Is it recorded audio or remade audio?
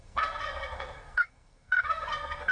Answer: remade